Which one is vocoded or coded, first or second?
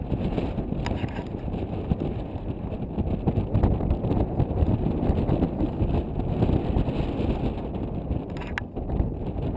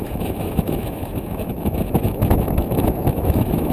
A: second